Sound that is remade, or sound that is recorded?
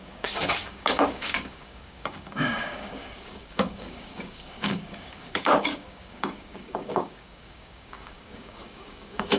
remade